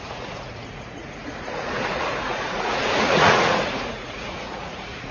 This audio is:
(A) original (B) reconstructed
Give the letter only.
B